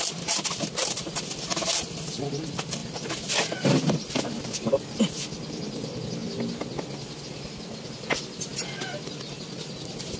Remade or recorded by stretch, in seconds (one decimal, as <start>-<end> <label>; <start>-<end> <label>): 0.0-10.2 recorded